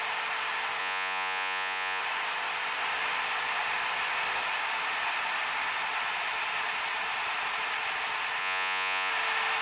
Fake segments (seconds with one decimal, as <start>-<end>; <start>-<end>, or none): 0.8-2.0; 8.4-9.1

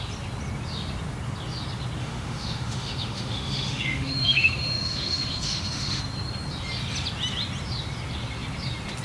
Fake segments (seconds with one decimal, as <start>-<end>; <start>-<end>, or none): 2.0-6.0

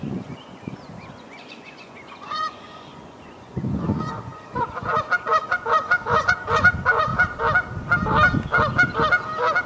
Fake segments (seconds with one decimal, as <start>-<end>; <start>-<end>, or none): 0.0-7.1

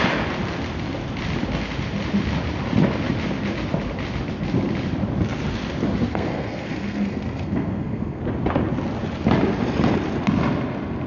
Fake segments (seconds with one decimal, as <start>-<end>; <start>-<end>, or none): 6.1-8.2

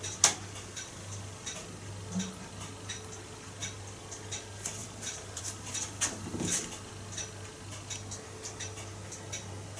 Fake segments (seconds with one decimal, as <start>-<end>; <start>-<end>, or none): 4.8-5.4